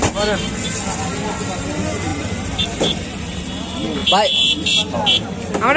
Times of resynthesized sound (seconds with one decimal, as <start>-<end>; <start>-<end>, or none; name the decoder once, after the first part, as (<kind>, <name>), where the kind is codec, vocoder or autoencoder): 2.1-3.4 (vocoder, BigVGAN v2)